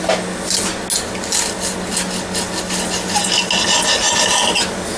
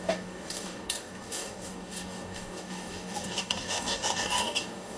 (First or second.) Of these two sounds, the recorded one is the first